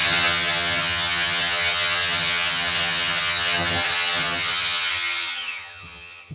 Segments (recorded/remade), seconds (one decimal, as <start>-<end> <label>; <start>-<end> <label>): 0.0-6.3 remade